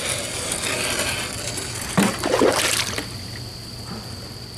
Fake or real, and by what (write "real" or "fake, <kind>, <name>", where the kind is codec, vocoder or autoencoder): real